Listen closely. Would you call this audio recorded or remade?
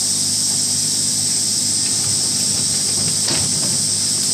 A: recorded